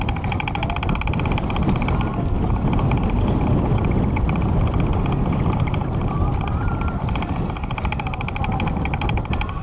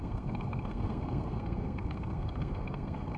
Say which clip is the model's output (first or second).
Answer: second